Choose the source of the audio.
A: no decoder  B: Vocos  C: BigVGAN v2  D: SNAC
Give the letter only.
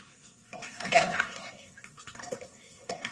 D